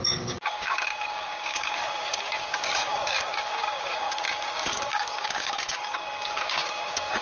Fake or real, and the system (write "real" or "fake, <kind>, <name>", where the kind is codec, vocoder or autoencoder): fake, codec, DAC